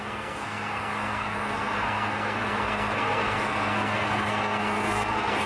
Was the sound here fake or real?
fake